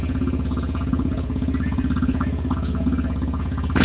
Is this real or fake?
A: fake